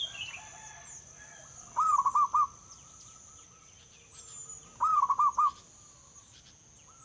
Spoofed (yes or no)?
no